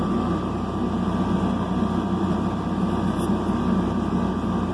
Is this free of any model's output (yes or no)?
yes